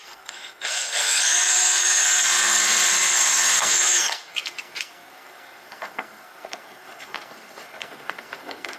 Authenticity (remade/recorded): remade